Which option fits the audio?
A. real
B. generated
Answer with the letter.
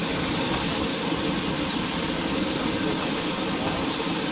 A